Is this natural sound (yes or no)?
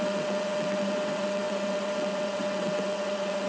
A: no